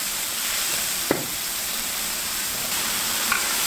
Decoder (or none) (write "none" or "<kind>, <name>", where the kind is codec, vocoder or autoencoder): vocoder, BigVGAN v2